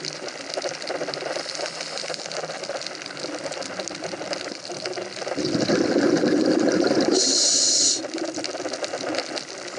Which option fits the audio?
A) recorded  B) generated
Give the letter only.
A